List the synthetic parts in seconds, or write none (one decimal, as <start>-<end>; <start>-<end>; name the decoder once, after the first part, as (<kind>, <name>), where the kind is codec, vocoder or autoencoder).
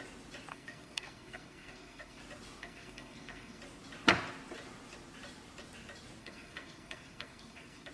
0.5-2.2 (codec, SNAC); 2.6-3.6; 6.2-7.9